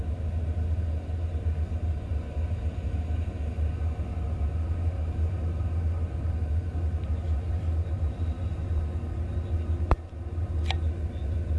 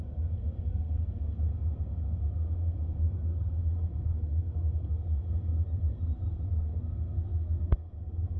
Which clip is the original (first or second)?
first